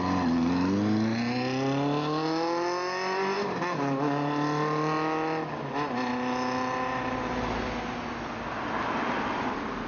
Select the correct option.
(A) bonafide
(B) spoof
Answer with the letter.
A